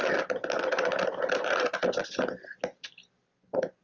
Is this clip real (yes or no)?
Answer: yes